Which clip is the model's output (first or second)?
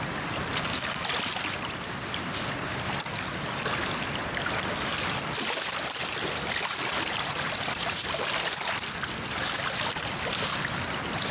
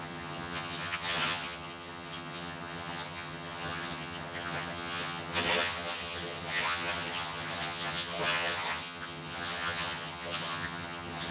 second